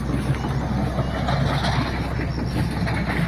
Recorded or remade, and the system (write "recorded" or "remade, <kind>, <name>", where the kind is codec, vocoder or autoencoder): recorded